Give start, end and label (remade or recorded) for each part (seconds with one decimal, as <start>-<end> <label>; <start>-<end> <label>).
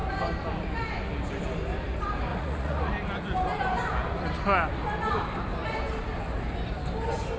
0.0-2.3 recorded; 2.3-2.9 remade; 2.9-7.4 recorded